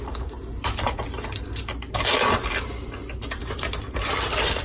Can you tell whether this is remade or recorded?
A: recorded